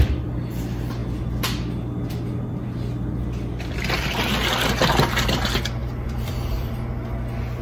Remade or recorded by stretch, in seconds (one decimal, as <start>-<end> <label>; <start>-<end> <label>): 0.0-5.8 recorded; 5.8-6.8 remade; 6.8-7.6 recorded